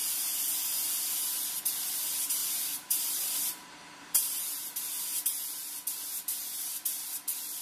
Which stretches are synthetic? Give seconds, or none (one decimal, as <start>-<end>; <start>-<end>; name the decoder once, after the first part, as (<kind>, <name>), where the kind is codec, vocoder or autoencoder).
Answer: 2.4-4.8 (vocoder, BigVGAN v2)